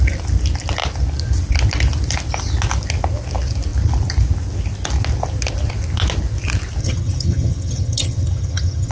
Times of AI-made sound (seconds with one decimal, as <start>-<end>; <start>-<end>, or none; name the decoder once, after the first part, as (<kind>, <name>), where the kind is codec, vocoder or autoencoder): 6.8-8.9 (vocoder, HiFi-GAN)